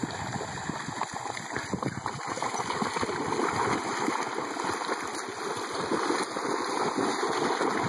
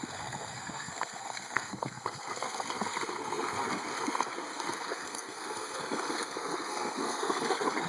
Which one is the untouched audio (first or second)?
first